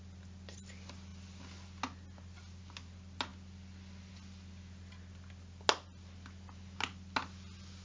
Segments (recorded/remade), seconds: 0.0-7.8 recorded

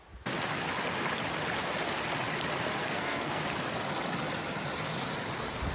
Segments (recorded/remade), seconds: 0.0-2.8 recorded; 2.8-3.4 remade; 3.4-5.7 recorded

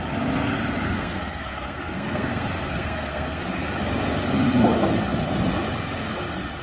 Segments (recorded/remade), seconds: 0.0-0.8 recorded; 0.8-3.4 remade; 3.4-6.6 recorded

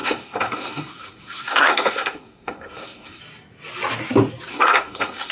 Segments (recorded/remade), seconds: 0.0-3.2 remade; 3.2-4.5 recorded; 4.5-5.3 remade